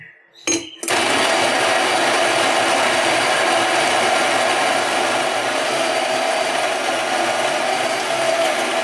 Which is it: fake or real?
real